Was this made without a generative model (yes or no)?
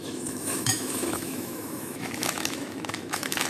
no